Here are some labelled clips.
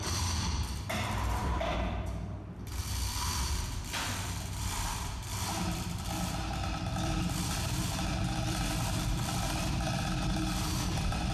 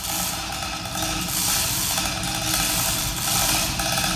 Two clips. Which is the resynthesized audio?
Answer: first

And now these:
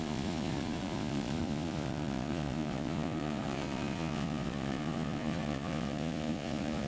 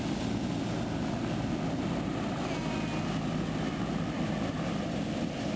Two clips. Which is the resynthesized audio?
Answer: first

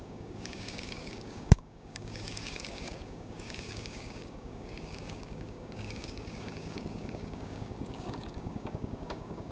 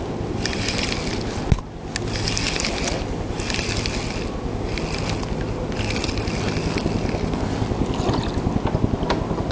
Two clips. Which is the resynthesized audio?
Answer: first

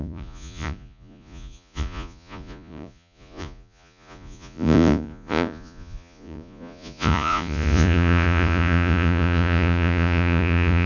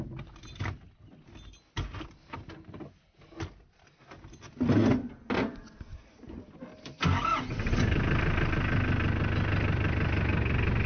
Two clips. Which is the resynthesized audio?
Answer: first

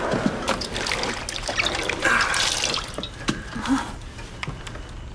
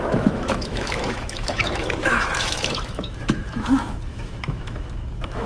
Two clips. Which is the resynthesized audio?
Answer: second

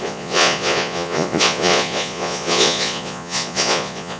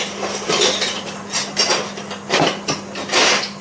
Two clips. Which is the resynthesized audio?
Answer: first